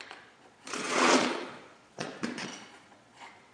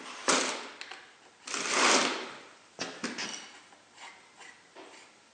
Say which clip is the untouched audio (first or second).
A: second